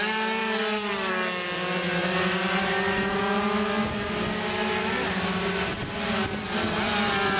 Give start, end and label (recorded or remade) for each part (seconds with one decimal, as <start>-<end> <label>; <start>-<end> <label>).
0.0-0.4 recorded; 0.4-1.1 remade; 1.1-2.0 recorded; 2.0-3.2 remade; 3.2-7.4 recorded